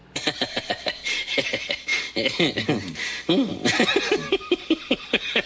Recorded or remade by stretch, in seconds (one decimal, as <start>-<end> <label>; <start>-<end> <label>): 0.0-0.6 remade; 0.6-5.5 recorded